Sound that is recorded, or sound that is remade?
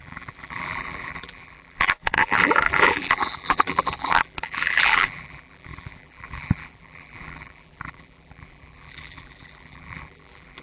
remade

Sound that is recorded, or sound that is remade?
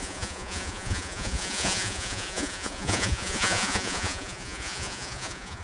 remade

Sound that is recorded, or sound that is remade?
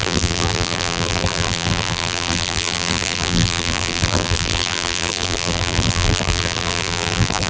remade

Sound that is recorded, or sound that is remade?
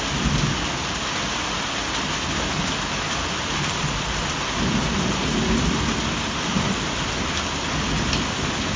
recorded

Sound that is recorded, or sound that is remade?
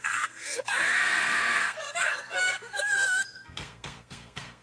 remade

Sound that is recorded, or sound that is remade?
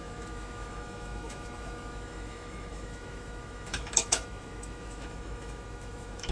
remade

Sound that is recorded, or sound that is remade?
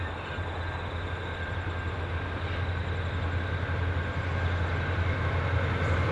recorded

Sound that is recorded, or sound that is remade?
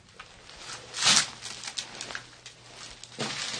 recorded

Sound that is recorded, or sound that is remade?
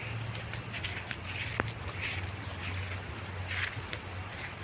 recorded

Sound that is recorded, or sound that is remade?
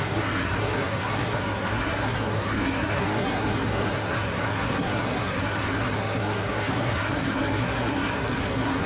remade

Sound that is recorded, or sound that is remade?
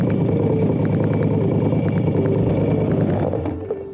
recorded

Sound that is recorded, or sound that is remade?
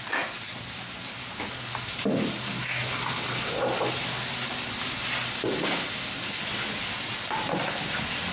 recorded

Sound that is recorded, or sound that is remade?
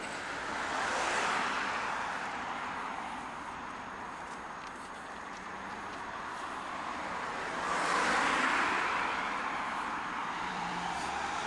remade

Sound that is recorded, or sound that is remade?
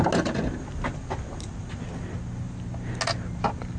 recorded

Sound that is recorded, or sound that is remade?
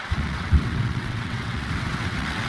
remade